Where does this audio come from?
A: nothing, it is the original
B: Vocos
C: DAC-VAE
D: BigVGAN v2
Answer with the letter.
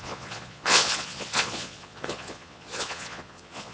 B